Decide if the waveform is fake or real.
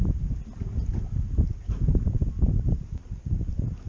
real